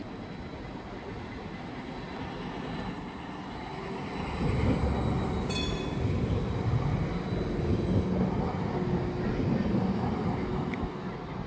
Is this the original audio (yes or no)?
yes